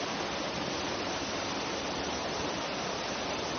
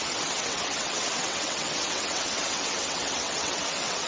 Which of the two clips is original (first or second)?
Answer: first